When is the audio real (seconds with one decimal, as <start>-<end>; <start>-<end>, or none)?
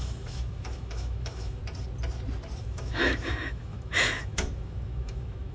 1.6-2.6